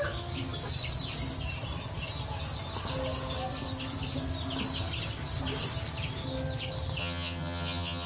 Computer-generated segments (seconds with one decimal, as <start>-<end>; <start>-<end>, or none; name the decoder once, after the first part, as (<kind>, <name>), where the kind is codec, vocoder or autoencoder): 7.0-8.1 (vocoder, HiFi-GAN)